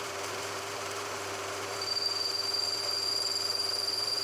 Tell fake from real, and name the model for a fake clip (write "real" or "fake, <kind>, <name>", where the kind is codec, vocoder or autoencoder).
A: fake, vocoder, BigVGAN v2